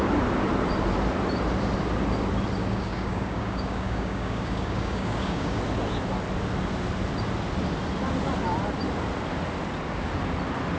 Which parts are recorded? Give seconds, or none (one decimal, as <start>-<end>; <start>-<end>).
0.0-2.6; 5.6-10.8